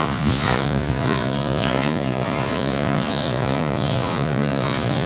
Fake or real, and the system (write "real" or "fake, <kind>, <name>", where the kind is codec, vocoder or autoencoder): fake, vocoder, Vocos